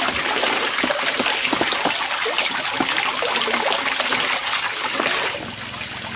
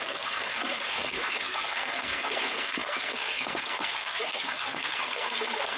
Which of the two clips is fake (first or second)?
second